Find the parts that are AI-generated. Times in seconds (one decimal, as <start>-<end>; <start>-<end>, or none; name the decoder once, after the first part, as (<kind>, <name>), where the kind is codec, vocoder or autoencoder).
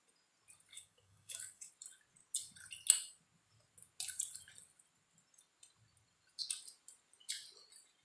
0.7-1.7 (codec, DAC)